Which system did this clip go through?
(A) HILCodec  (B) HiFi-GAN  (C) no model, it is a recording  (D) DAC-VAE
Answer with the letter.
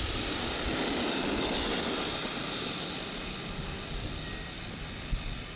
C